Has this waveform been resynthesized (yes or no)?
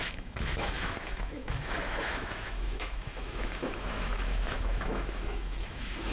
yes